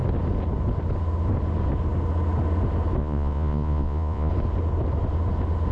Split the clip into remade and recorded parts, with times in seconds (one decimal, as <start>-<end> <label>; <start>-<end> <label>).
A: 0.0-3.0 recorded; 3.0-4.3 remade; 4.3-5.7 recorded